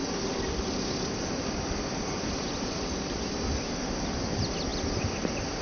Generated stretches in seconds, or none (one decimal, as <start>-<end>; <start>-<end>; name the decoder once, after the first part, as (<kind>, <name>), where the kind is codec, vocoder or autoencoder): none